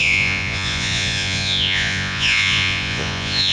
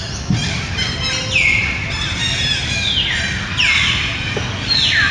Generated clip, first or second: first